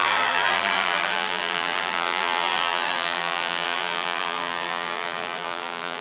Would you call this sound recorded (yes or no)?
no